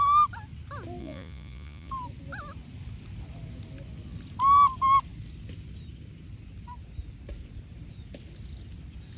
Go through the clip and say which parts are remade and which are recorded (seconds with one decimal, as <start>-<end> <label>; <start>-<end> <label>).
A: 0.0-1.0 recorded; 1.0-1.9 remade; 1.9-9.2 recorded